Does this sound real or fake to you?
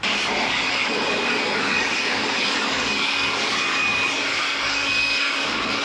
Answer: fake